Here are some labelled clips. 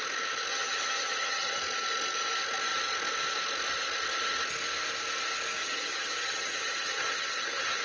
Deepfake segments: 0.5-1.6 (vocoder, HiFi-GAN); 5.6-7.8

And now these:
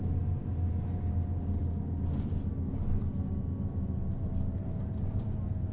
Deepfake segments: none

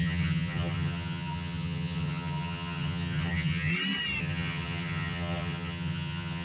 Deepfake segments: 0.0-3.7 (vocoder, HiFi-GAN); 4.2-6.4

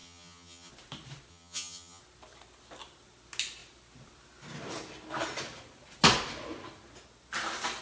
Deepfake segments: 0.0-0.7 (vocoder, HiFi-GAN); 1.3-2.0

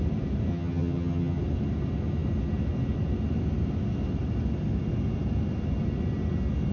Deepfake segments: 0.5-1.4 (vocoder, HiFi-GAN)

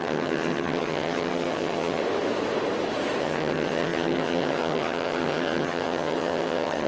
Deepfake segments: 0.0-2.0 (vocoder, HiFi-GAN); 3.2-6.9

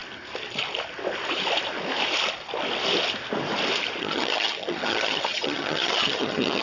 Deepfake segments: 4.0-6.6 (vocoder, HiFi-GAN)

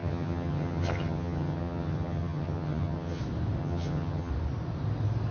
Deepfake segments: 0.0-3.2 (vocoder, HiFi-GAN); 3.6-4.3